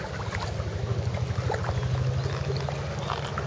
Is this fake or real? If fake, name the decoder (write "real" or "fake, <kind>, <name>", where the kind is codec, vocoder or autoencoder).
real